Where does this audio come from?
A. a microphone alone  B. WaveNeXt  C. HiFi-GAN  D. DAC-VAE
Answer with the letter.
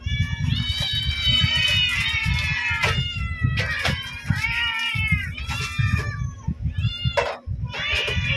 A